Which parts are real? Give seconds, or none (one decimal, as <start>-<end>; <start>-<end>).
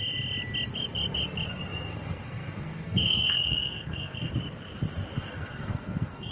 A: 0.0-1.5; 4.3-5.1